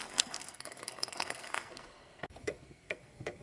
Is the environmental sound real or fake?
fake